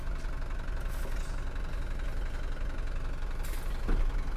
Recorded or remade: recorded